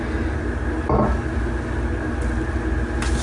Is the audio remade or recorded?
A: recorded